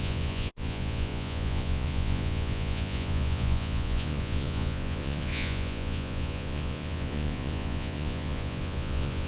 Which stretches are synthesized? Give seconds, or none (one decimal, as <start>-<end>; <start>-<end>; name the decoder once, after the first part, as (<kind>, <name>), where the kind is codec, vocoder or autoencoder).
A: 0.0-9.3 (vocoder, Vocos)